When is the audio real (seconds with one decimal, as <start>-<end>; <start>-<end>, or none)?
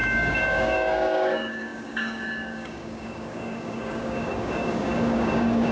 none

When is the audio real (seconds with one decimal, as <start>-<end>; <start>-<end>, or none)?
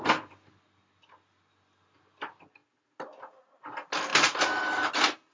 0.0-5.3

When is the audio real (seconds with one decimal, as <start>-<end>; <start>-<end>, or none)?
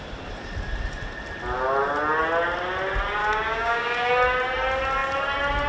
0.0-3.2; 4.1-5.7